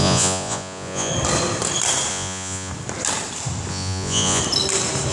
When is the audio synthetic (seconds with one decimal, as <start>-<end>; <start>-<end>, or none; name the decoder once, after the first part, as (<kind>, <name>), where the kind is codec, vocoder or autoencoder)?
0.0-1.1 (vocoder, Vocos); 2.1-2.7; 3.7-4.4